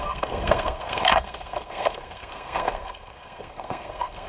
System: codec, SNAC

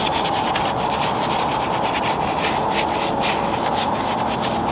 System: none